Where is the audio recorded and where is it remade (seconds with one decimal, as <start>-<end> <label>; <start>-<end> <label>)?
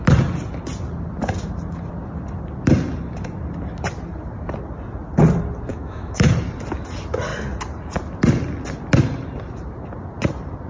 0.0-5.7 recorded; 5.7-6.3 remade; 6.3-10.7 recorded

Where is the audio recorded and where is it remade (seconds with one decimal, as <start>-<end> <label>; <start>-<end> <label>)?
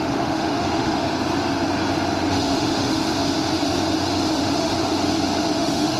0.0-1.0 remade; 1.0-2.3 recorded; 2.3-3.0 remade; 3.0-4.3 recorded; 4.3-4.7 remade; 4.7-5.5 recorded; 5.5-6.0 remade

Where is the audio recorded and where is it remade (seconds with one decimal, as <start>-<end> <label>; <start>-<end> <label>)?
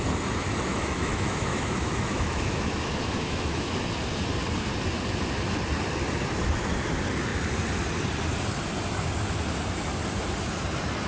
0.0-0.7 recorded; 0.7-3.9 remade; 3.9-11.1 recorded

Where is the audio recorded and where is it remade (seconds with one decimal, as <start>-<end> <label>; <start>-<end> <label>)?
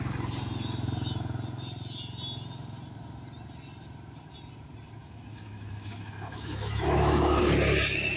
0.0-5.0 recorded; 5.0-7.4 remade; 7.4-8.2 recorded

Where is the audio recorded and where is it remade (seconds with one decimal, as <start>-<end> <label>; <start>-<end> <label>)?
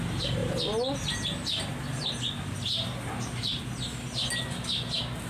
0.0-5.3 recorded